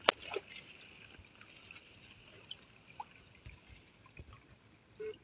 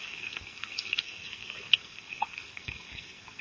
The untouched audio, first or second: first